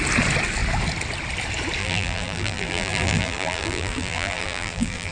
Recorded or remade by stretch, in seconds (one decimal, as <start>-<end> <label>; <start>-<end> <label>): 0.0-1.8 recorded; 1.8-5.1 remade

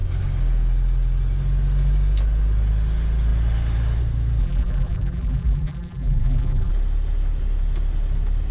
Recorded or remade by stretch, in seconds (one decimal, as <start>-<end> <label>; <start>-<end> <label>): 0.0-4.4 recorded; 4.4-6.7 remade; 6.7-8.5 recorded

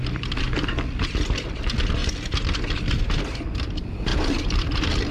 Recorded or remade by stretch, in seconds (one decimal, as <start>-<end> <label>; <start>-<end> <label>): 0.0-2.0 remade; 2.0-2.9 recorded; 2.9-5.1 remade

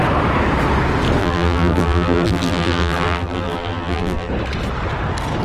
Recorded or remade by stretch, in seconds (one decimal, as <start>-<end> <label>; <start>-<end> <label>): 0.0-1.2 recorded; 1.2-4.3 remade; 4.3-5.4 recorded

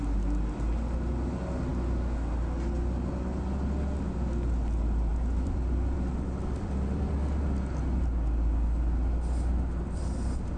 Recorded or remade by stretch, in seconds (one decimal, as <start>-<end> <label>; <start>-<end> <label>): 0.0-5.1 recorded; 5.1-7.1 remade; 7.1-10.6 recorded

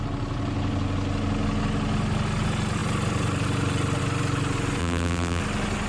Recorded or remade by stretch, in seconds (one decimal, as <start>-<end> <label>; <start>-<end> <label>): 0.0-4.8 recorded; 4.8-5.4 remade; 5.4-5.9 recorded

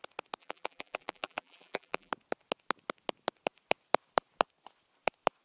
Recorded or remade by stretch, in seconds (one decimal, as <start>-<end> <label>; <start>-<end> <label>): 0.0-0.4 recorded; 0.4-2.1 remade; 2.1-5.4 recorded